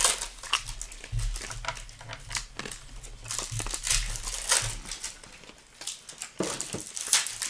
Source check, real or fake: real